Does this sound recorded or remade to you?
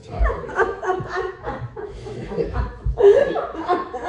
remade